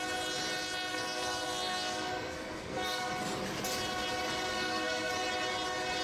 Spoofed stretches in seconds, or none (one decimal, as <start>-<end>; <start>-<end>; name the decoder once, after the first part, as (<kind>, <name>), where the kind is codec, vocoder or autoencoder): 0.9-3.1 (codec, SNAC); 4.5-5.1